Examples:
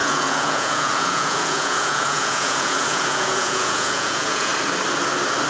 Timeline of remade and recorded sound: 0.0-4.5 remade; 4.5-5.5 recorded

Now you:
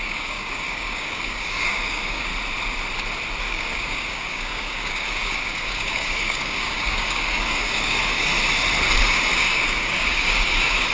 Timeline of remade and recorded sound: 0.0-2.3 remade; 2.3-3.4 recorded; 3.4-8.3 remade; 8.3-9.0 recorded; 9.0-10.9 remade

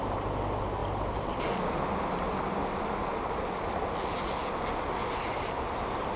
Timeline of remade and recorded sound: 0.0-6.2 recorded

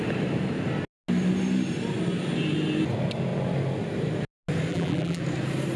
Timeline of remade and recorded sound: 0.0-4.7 recorded; 4.7-5.2 remade; 5.2-5.8 recorded

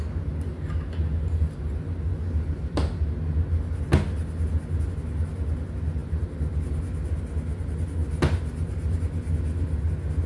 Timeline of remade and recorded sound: 0.0-10.3 recorded

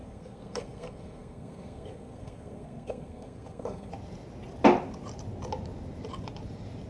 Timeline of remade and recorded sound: 0.0-3.9 remade; 3.9-6.9 recorded

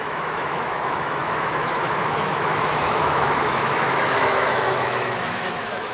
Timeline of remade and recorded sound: 0.0-5.9 remade

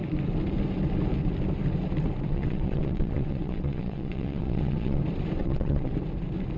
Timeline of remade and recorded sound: 0.0-2.3 recorded; 2.3-5.0 remade; 5.0-5.4 recorded; 5.4-5.9 remade; 5.9-6.6 recorded